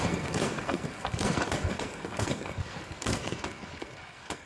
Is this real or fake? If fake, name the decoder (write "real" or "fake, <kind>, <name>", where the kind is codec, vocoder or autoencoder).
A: fake, codec, SNAC